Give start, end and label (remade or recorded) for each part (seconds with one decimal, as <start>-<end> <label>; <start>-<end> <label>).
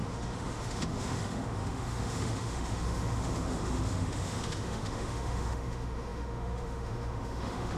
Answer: 0.0-7.8 remade